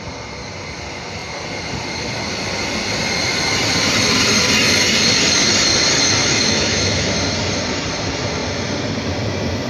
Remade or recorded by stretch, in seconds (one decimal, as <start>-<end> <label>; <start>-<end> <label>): 0.0-6.2 recorded; 6.2-7.1 remade; 7.1-9.7 recorded

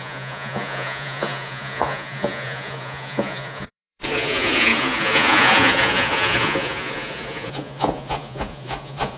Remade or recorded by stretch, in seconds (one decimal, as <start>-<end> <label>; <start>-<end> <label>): 0.0-9.2 remade

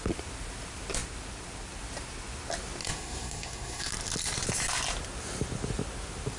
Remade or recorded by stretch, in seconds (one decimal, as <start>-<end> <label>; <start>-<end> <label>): 0.0-2.8 recorded; 2.8-3.9 remade; 3.9-6.4 recorded